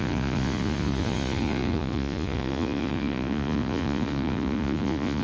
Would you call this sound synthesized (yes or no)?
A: yes